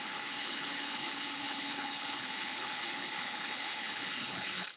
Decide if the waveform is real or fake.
fake